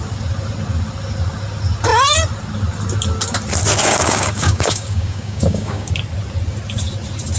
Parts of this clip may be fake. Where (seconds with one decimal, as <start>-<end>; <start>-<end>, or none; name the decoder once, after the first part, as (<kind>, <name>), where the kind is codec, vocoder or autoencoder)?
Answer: 3.8-5.9 (codec, DAC)